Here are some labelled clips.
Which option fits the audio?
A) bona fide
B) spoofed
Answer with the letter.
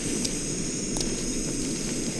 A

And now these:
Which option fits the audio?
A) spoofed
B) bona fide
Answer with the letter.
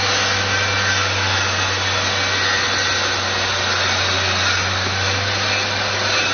B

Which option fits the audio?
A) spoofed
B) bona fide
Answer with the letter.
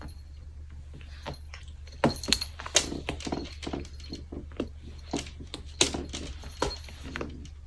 B